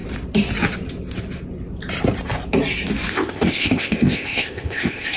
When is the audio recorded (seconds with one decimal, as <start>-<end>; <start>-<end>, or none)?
0.0-3.1